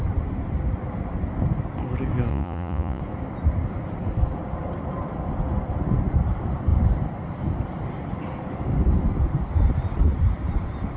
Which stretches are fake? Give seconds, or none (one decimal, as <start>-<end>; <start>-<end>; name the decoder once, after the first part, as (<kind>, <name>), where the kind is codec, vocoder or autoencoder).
2.3-3.0 (vocoder, Vocos)